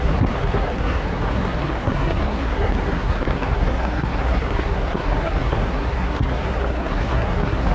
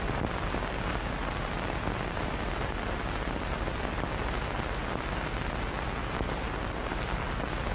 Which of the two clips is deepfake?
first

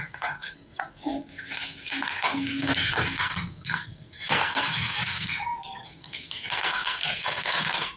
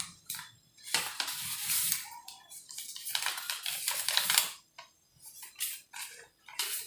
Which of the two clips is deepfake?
first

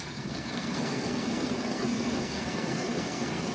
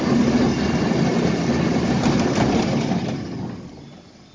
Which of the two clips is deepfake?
first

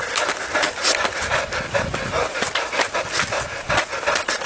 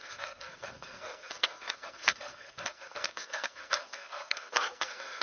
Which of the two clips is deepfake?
second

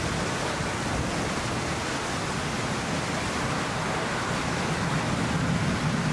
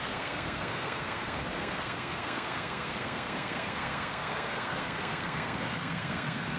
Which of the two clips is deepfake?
second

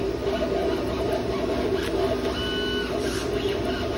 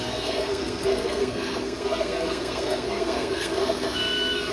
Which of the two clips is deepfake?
second